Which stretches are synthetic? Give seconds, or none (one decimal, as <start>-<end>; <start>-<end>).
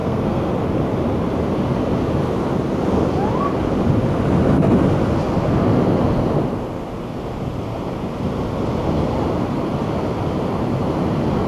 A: 0.0-0.5